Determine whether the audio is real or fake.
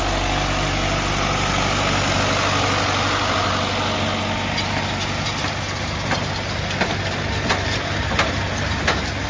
real